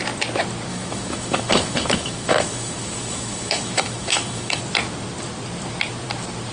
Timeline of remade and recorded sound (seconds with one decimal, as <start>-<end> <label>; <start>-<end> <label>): 0.0-0.7 recorded; 0.7-4.6 remade; 4.6-6.5 recorded